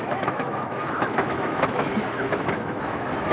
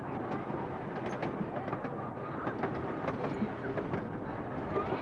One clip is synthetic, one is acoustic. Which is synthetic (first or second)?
first